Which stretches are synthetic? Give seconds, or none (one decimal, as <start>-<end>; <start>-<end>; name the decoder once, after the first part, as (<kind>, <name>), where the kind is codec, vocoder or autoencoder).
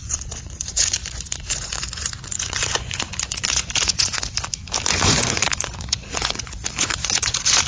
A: 0.0-4.3 (vocoder, Vocos); 4.9-7.7